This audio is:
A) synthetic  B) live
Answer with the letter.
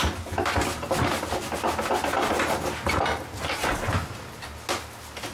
B